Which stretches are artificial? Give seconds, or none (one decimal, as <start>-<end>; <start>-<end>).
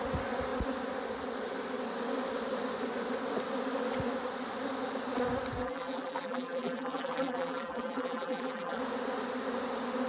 5.6-8.8